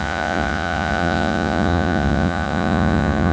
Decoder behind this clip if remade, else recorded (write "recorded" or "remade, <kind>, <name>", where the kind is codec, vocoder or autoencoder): remade, vocoder, Vocos